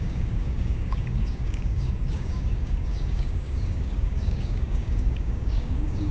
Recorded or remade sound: remade